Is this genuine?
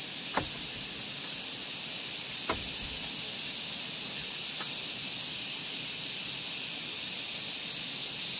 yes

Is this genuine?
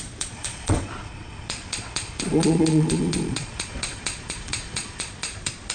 no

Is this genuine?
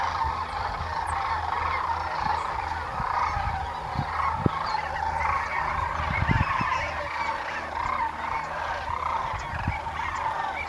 yes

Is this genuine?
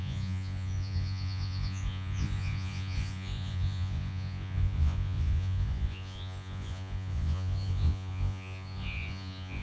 no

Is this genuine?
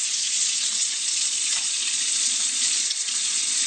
no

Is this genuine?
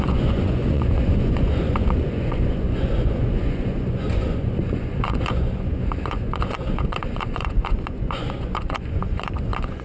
no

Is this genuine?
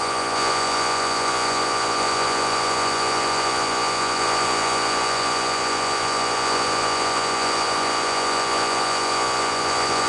no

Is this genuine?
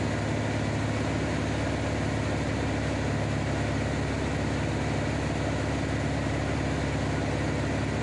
yes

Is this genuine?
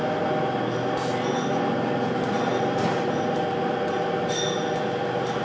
yes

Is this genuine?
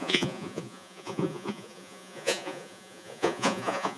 no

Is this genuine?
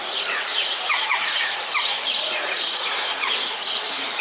no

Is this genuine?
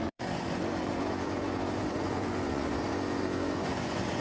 no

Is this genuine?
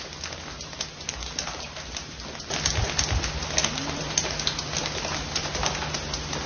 yes